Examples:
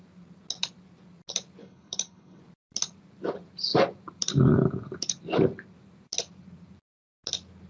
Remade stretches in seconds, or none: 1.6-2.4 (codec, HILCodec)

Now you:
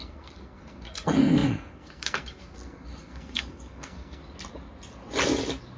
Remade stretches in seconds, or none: 0.0-4.2 (codec, SNAC)